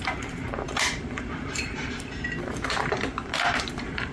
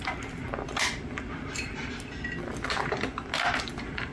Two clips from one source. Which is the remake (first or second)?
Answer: first